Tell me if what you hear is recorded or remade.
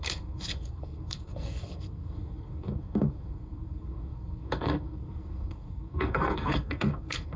remade